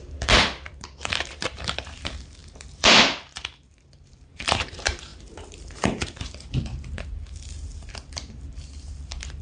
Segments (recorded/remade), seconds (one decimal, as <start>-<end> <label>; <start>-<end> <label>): 0.0-9.4 remade